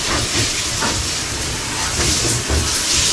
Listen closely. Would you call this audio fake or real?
fake